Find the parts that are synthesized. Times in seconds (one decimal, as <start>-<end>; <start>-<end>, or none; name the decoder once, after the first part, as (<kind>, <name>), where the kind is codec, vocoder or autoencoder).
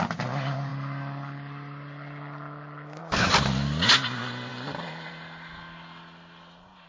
none